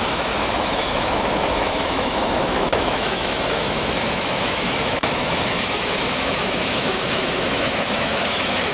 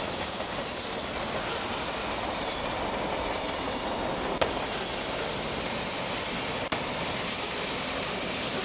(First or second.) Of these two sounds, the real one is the second